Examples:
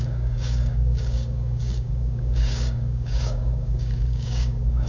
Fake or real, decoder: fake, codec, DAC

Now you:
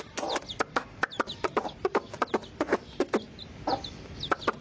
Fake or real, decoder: real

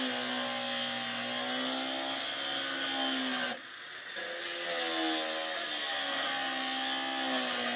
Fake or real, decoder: real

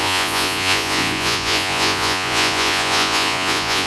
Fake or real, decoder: fake, vocoder, Vocos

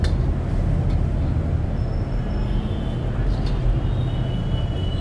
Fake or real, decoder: real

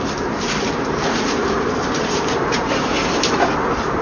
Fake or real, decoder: fake, vocoder, BigVGAN v2